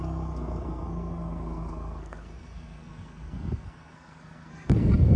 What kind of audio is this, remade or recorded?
remade